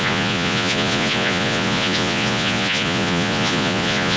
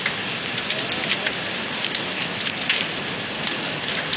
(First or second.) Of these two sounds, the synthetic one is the first